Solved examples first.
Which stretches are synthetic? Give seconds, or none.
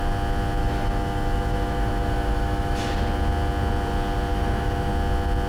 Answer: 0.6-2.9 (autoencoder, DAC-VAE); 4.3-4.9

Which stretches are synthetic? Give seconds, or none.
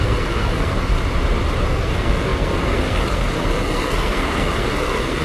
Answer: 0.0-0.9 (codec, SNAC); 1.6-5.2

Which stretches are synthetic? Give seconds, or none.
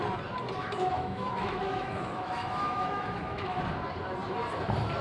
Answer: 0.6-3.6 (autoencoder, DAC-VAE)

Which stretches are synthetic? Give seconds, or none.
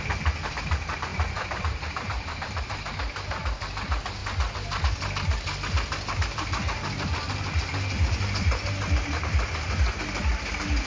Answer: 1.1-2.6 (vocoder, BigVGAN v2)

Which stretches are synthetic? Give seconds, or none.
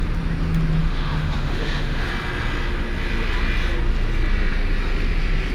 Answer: 0.8-2.1 (autoencoder, DAC-VAE)